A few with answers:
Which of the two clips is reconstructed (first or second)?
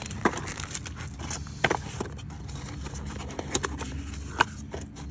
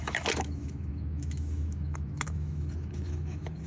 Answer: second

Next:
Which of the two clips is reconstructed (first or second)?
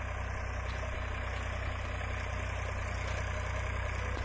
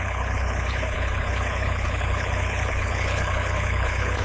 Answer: second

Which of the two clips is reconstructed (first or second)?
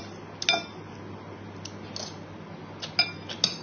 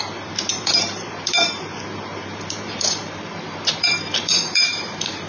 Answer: second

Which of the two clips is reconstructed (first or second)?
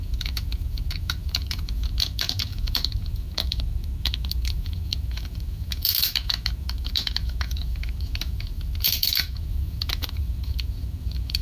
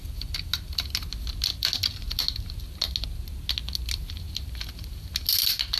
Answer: first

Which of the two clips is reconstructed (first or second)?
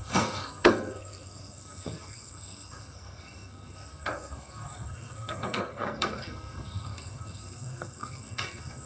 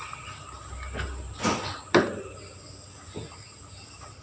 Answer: first